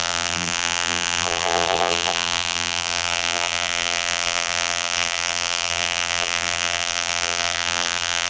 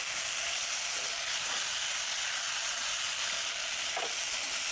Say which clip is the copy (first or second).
first